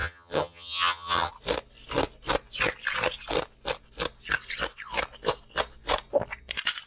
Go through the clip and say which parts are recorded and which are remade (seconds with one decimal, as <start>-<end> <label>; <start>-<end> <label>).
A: 0.0-1.3 remade; 1.3-6.9 recorded